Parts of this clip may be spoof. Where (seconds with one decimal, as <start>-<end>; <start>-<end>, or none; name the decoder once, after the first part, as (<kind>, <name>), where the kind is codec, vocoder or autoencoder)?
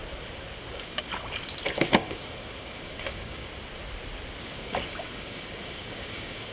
0.7-1.1 (codec, DAC); 1.7-3.5; 4.4-6.5